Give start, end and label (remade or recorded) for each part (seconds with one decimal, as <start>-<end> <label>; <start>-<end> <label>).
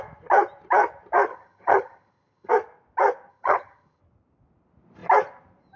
0.0-1.3 recorded; 1.3-2.5 remade; 2.5-3.3 recorded; 3.3-4.0 remade; 4.0-5.8 recorded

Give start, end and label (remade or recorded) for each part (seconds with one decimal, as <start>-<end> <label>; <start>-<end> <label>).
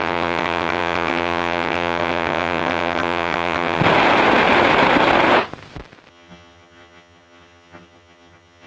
0.0-3.8 remade; 3.8-6.1 recorded; 6.1-8.7 remade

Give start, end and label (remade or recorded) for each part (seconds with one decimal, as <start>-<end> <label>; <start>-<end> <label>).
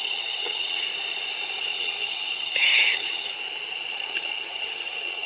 0.0-0.9 remade; 0.9-1.6 recorded; 1.6-3.3 remade; 3.3-3.9 recorded; 3.9-5.3 remade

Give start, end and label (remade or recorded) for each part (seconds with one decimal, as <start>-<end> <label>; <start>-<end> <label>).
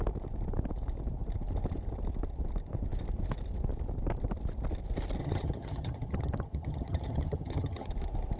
0.0-5.2 recorded; 5.2-7.9 remade; 7.9-8.4 recorded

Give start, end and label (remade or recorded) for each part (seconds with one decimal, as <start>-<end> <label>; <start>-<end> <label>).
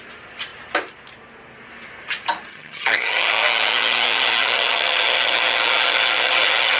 0.0-2.5 recorded; 2.5-6.8 remade